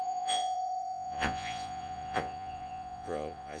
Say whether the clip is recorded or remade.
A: remade